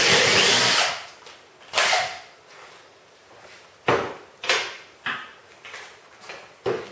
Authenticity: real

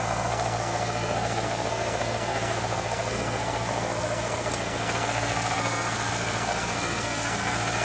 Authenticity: fake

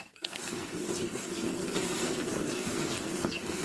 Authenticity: fake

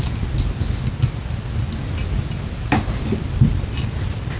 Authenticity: real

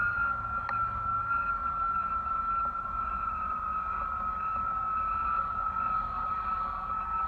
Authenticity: real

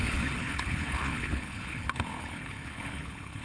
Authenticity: fake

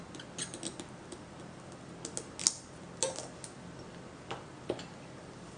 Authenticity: real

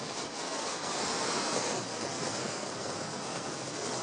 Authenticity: fake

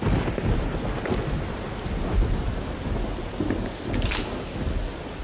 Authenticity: real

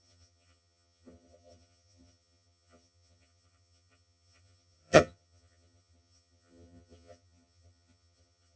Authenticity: fake